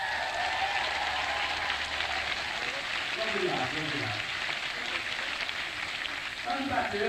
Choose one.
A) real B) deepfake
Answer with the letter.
A